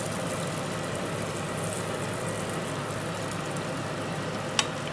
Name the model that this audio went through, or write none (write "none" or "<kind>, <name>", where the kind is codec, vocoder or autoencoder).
none